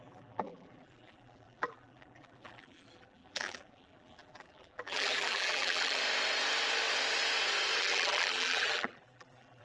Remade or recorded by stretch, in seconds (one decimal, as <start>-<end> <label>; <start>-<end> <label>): 0.0-6.0 remade; 6.0-7.8 recorded; 7.8-9.6 remade